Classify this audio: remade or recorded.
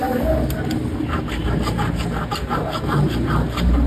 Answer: recorded